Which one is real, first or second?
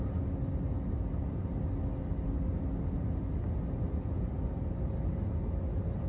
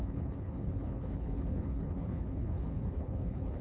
first